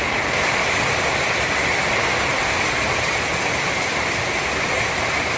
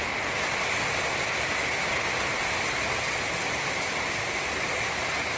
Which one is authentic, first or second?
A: second